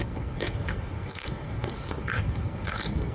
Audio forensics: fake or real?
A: fake